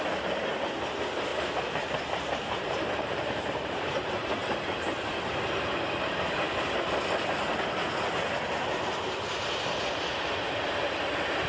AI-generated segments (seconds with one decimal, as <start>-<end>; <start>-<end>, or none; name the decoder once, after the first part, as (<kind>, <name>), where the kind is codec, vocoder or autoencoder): 1.3-3.8 (vocoder, BigVGAN v2)